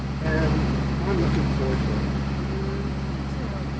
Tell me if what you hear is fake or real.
real